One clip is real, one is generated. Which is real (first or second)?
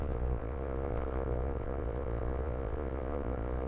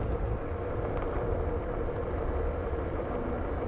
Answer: second